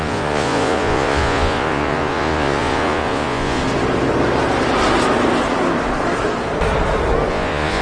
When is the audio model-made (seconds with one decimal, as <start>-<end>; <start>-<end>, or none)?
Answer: 0.0-3.6; 7.3-7.8